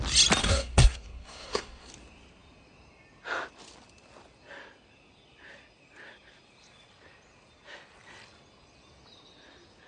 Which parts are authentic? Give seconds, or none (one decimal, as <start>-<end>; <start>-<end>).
0.0-0.4; 1.9-9.9